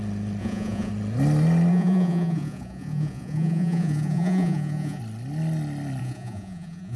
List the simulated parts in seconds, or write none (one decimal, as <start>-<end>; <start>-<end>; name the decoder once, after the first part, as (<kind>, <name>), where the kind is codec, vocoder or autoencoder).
0.4-0.9 (vocoder, Vocos); 1.7-5.0; 6.0-7.0